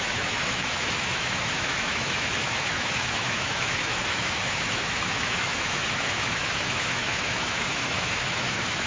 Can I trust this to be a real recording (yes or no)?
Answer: no